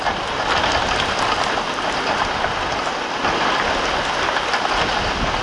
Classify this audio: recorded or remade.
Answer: recorded